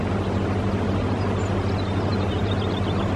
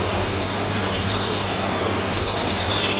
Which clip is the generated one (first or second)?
second